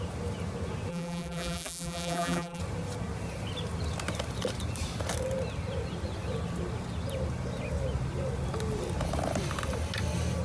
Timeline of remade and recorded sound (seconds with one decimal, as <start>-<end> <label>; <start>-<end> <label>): 0.0-0.9 recorded; 0.9-2.6 remade; 2.6-10.4 recorded